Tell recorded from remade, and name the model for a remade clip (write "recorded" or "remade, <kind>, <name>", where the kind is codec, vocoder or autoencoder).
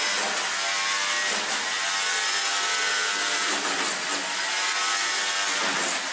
recorded